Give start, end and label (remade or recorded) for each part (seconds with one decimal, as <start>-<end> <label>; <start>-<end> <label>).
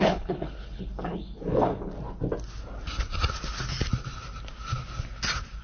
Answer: 0.0-1.9 remade; 1.9-5.6 recorded